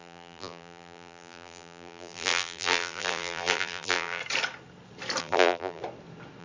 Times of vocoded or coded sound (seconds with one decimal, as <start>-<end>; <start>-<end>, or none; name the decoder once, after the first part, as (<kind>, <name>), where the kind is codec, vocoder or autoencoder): 0.0-4.2 (vocoder, BigVGAN v2); 5.2-5.8